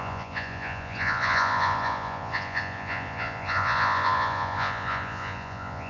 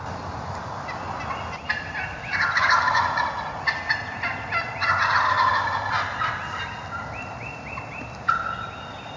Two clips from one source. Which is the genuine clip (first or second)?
second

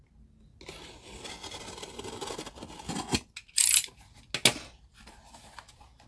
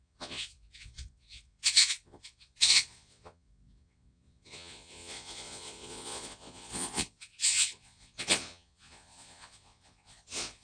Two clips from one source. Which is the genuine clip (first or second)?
first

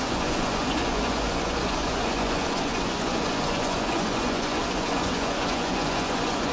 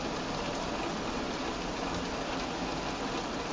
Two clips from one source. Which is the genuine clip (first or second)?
second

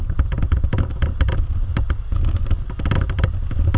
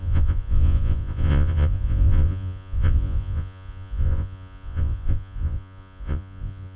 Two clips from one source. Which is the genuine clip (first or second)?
first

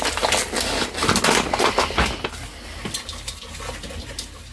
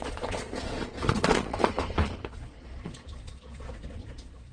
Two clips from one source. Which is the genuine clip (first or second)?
first